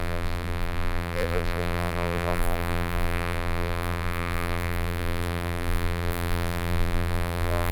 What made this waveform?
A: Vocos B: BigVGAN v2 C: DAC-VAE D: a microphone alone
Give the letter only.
B